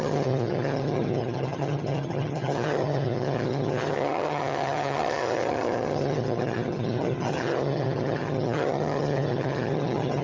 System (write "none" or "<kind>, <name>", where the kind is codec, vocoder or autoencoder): vocoder, HiFi-GAN